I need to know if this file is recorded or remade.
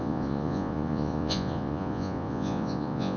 remade